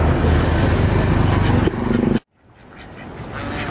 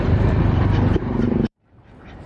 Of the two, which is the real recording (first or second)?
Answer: first